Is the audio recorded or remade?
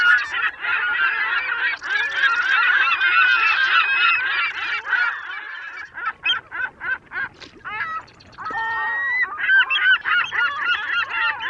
recorded